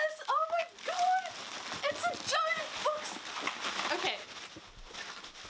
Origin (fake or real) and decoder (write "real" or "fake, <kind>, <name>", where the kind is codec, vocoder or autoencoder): real